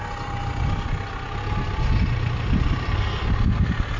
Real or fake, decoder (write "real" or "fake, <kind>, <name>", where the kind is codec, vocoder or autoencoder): real